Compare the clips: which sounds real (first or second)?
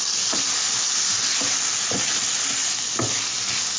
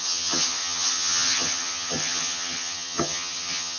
first